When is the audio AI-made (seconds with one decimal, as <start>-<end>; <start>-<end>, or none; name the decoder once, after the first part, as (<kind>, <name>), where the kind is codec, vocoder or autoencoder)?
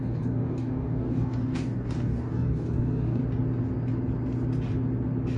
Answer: 0.0-3.2 (codec, DAC)